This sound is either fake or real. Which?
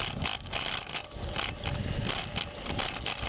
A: real